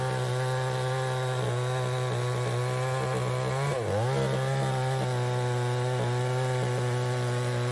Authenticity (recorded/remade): recorded